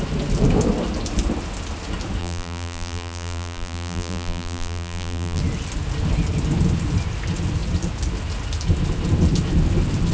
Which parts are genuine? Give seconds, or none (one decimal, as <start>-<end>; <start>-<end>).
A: 0.0-2.2; 5.4-10.1